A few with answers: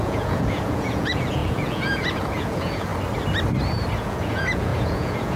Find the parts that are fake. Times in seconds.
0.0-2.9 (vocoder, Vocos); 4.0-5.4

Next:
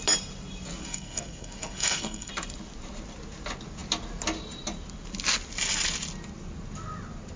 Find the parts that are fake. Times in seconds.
0.8-2.3 (codec, SNAC)

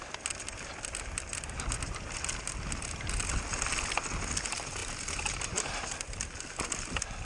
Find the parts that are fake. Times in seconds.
none

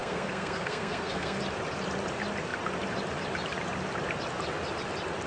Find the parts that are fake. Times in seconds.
0.0-1.4 (codec, SNAC)

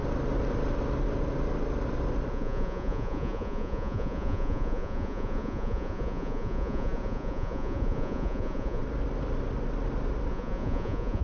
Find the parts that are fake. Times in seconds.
2.3-8.8 (vocoder, Vocos); 10.3-11.2

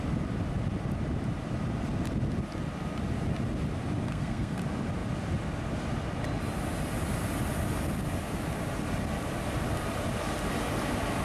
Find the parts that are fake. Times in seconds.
4.1-4.6 (codec, SNAC)

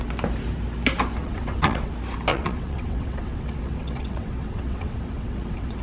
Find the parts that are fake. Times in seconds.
1.2-1.9 (vocoder, WaveNeXt); 2.3-5.8

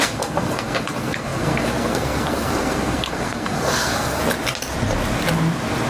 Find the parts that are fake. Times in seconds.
0.0-4.2 (codec, SNAC)